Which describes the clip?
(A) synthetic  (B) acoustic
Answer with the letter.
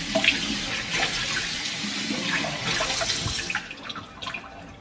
B